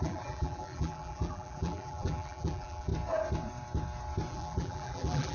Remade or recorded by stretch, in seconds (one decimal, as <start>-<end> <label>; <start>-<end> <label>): 0.0-2.9 remade; 2.9-4.3 recorded; 4.3-5.3 remade